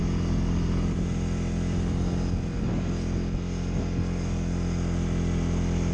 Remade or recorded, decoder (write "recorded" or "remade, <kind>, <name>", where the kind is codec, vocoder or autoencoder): recorded